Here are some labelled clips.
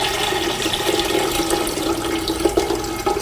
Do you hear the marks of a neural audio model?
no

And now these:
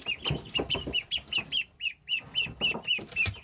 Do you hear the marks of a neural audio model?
no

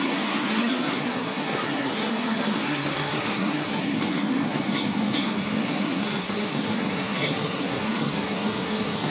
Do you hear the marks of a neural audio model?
yes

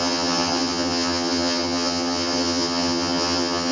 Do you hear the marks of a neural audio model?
yes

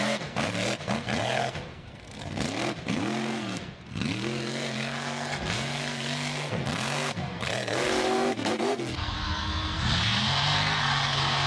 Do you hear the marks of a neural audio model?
yes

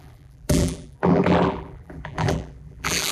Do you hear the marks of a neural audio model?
yes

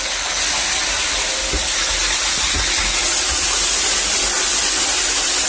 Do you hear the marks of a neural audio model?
no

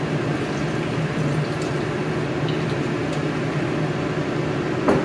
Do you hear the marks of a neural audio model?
no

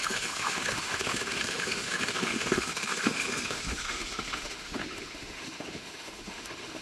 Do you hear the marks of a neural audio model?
yes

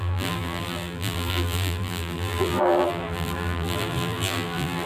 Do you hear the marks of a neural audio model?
yes